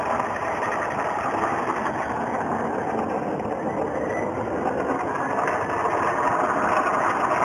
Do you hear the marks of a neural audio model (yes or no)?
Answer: no